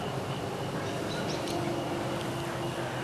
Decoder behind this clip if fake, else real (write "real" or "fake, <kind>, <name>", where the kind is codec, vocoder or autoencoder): fake, vocoder, BigVGAN v2